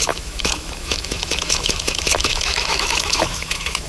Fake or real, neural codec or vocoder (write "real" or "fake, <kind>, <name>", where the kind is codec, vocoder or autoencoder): fake, autoencoder, DAC-VAE